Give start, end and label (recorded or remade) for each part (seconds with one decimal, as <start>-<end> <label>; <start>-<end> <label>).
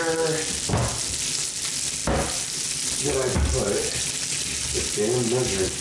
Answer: 0.0-5.8 recorded